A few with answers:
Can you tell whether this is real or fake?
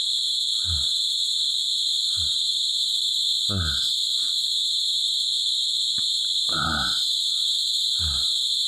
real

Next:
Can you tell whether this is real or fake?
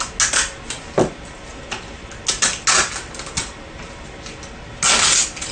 real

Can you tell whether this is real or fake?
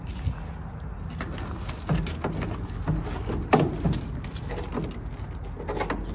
real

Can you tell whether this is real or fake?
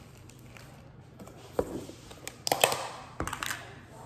real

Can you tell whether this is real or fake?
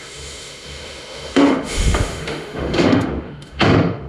fake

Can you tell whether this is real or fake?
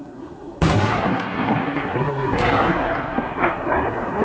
fake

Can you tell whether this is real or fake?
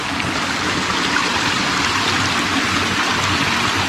real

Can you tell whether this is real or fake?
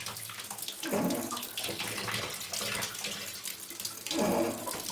real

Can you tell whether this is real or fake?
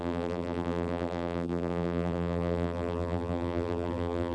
fake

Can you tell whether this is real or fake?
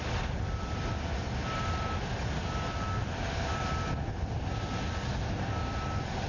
real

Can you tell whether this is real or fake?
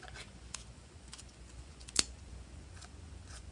fake